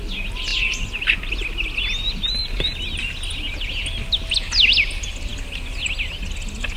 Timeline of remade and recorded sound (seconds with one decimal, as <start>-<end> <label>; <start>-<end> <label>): 0.0-6.8 recorded